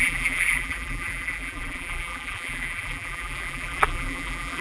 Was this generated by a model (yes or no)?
yes